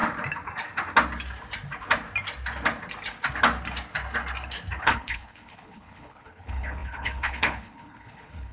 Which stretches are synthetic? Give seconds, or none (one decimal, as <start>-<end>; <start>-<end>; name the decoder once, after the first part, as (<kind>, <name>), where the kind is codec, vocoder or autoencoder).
4.8-8.5 (codec, HILCodec)